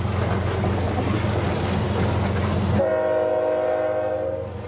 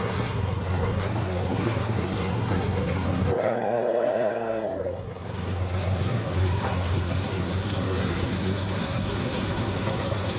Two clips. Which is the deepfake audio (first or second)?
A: second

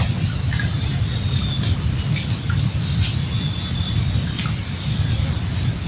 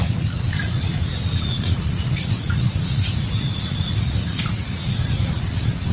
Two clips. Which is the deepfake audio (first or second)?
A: second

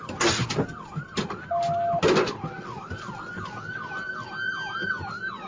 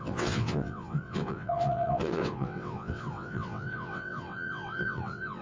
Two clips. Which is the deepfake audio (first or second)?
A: second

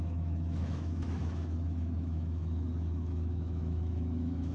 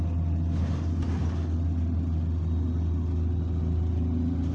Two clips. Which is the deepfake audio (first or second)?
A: first